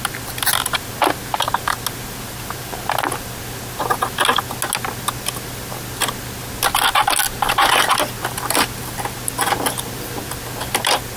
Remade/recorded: recorded